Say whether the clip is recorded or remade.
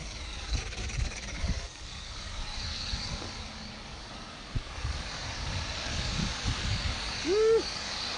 remade